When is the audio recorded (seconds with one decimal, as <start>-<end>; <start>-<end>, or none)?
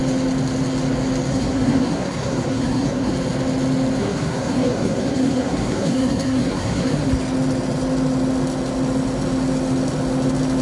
0.0-1.3; 3.1-4.0; 7.1-10.6